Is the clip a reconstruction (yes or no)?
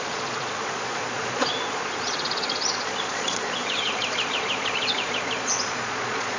yes